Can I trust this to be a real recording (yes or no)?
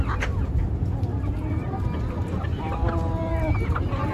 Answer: yes